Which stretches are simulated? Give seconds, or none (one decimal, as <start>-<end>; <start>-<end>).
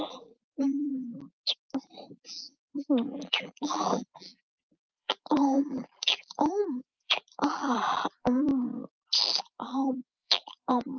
0.0-0.9; 2.1-8.5; 9.2-11.0